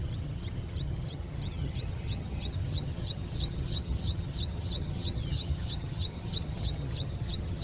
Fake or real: fake